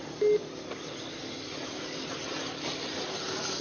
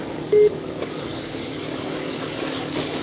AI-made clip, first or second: second